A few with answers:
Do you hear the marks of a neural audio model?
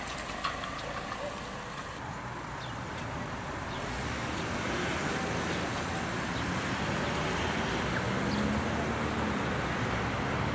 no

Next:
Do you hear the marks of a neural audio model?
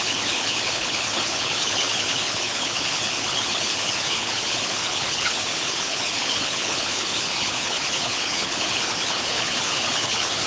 yes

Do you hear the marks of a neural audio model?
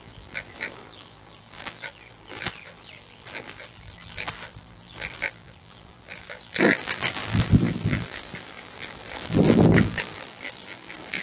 yes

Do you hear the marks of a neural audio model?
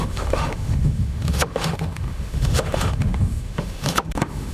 yes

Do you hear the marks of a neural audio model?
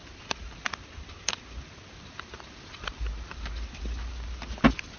no